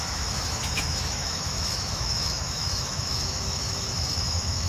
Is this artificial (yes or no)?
yes